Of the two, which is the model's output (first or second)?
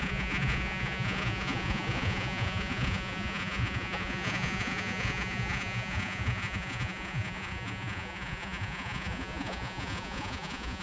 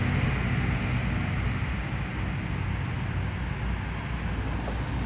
first